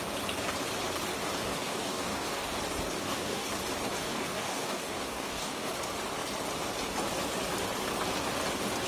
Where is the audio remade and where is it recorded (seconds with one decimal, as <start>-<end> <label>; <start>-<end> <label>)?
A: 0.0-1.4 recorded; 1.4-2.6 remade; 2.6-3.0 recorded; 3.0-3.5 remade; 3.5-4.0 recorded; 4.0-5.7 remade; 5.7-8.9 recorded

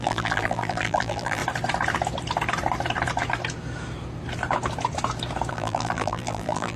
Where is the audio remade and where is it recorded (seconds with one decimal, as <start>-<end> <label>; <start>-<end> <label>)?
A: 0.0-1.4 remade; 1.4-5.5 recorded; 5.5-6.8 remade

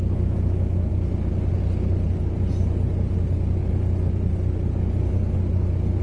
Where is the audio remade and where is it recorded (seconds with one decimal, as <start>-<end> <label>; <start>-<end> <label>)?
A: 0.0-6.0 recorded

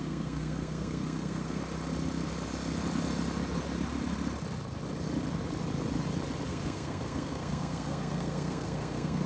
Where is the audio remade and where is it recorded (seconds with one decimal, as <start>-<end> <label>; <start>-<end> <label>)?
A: 0.0-1.6 remade; 1.6-6.5 recorded; 6.5-9.3 remade

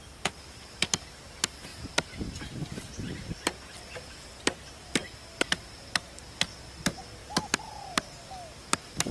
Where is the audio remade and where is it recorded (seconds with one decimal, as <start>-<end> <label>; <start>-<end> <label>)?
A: 0.0-1.7 recorded; 1.7-3.6 remade; 3.6-5.0 recorded; 5.0-5.8 remade; 5.8-9.1 recorded

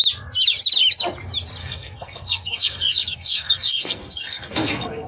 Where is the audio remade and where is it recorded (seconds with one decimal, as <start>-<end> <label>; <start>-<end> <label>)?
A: 0.0-1.6 recorded; 1.6-5.1 remade

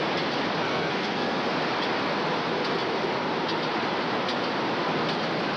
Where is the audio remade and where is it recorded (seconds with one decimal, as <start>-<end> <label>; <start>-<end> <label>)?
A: 0.0-0.6 recorded; 0.6-1.4 remade; 1.4-5.6 recorded